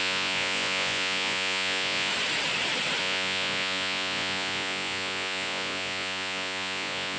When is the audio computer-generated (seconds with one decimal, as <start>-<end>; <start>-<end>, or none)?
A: 0.0-2.1; 3.0-7.2